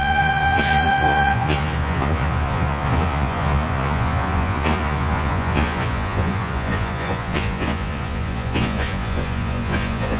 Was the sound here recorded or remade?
remade